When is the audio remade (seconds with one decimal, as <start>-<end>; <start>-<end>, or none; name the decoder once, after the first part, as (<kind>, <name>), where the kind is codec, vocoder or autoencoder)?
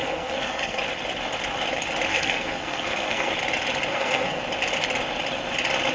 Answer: 0.0-0.8 (codec, SNAC); 2.1-3.3; 3.9-4.4